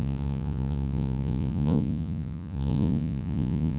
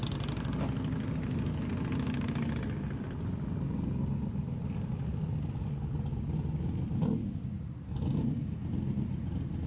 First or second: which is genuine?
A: second